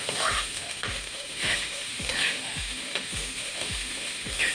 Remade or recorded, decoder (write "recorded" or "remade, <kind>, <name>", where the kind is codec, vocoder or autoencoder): remade, autoencoder, DAC-VAE